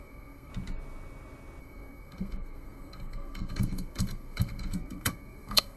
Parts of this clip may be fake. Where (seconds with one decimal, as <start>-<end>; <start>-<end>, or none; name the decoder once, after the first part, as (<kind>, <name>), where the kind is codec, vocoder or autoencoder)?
0.0-0.5 (codec, SNAC); 1.6-5.8